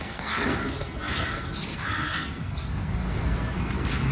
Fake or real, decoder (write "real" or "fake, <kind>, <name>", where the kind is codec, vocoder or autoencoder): fake, codec, SNAC